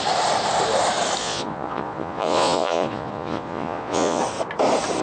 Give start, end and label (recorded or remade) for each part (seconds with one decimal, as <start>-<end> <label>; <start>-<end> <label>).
0.0-1.2 recorded; 1.2-4.2 remade; 4.2-5.0 recorded